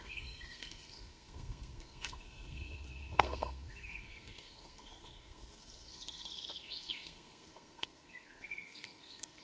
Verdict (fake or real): fake